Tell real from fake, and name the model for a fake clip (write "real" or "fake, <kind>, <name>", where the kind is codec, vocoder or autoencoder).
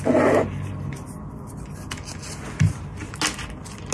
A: real